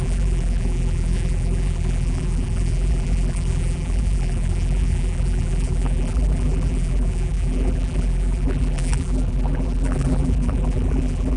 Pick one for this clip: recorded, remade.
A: remade